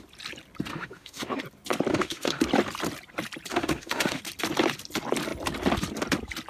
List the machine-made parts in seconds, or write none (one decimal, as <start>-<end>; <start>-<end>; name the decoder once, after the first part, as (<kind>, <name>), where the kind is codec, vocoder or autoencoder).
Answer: 0.7-1.4 (autoencoder, DAC-VAE); 1.9-2.4; 3.5-4.2